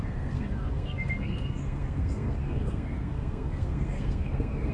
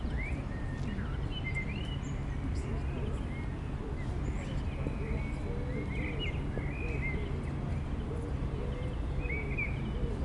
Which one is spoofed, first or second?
first